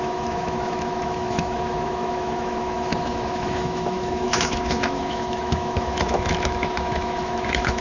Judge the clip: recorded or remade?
remade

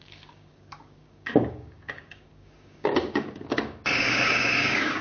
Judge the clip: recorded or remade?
remade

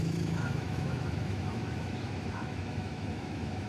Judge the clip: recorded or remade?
remade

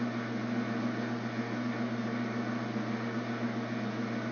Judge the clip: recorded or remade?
recorded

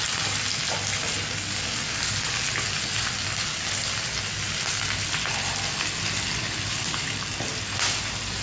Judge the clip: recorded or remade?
recorded